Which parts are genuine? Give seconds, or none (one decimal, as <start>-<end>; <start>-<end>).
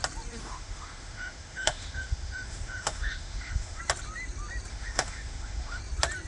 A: 0.0-0.4; 3.8-4.7; 5.8-6.3